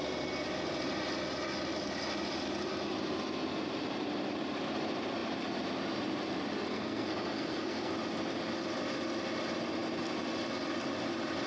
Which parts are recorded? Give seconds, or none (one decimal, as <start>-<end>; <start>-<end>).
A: 0.0-6.7; 7.9-11.5